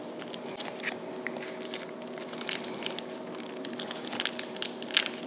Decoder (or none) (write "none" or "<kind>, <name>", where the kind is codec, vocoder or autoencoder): none